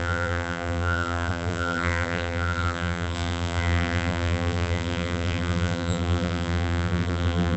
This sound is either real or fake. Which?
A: fake